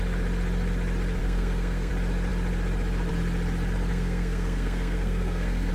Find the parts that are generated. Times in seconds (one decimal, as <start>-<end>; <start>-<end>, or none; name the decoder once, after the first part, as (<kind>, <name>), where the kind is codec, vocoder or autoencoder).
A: 1.2-1.9 (codec, SNAC); 3.9-5.7